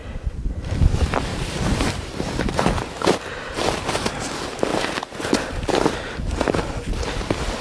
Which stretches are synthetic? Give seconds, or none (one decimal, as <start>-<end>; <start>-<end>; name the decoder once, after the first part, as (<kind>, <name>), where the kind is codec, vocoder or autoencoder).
0.0-0.6 (vocoder, BigVGAN v2); 1.3-3.7; 4.7-6.6